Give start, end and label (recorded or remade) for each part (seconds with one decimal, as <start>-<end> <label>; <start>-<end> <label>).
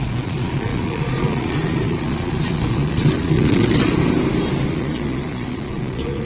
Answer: 0.0-4.0 remade; 4.0-4.7 recorded; 4.7-6.3 remade